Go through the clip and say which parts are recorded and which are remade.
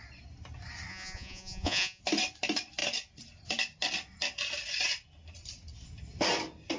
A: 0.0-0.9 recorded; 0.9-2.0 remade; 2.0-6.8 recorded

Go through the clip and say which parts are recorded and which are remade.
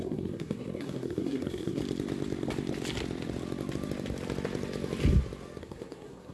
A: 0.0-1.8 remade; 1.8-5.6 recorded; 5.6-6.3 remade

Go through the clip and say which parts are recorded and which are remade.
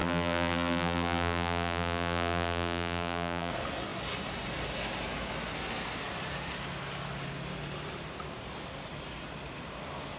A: 0.0-3.5 remade; 3.5-10.2 recorded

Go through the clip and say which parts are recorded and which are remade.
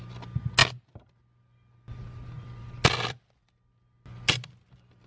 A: 0.0-5.1 recorded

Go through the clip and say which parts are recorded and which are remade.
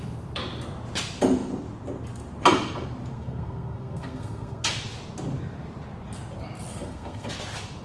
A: 0.0-3.1 recorded; 3.1-4.7 remade; 4.7-6.7 recorded; 6.7-7.3 remade; 7.3-7.8 recorded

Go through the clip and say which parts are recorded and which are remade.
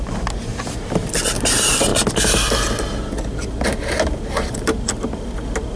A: 0.0-5.8 recorded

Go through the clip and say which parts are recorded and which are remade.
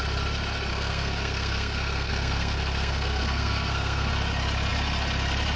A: 0.0-0.7 recorded; 0.7-4.1 remade; 4.1-5.6 recorded